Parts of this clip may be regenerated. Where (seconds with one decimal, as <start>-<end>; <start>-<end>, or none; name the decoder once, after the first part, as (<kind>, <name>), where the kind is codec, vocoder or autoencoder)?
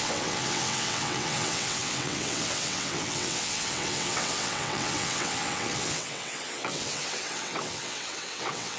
0.0-8.8 (vocoder, WaveNeXt)